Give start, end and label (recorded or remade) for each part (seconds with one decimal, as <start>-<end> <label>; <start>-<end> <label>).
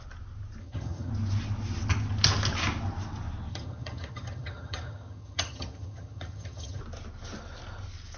0.0-0.6 recorded; 0.6-1.1 remade; 1.1-3.5 recorded; 3.5-6.8 remade; 6.8-8.2 recorded